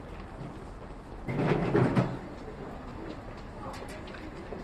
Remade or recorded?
recorded